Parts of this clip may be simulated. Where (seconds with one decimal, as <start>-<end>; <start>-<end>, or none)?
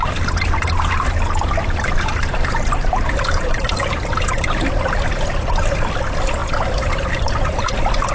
2.1-3.9; 6.4-7.3